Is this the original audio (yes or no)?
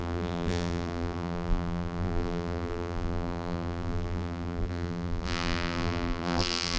no